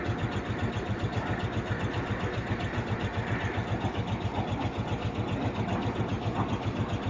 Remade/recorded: recorded